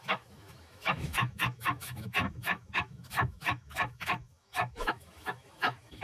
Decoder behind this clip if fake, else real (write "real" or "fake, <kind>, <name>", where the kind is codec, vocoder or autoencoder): fake, autoencoder, DAC-VAE